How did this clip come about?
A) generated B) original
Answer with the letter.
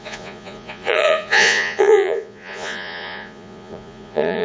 A